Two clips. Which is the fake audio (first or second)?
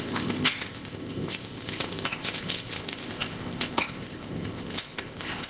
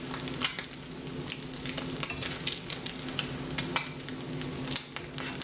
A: first